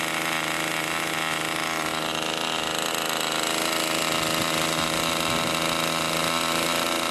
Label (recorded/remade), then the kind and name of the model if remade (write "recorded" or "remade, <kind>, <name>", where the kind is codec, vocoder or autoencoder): recorded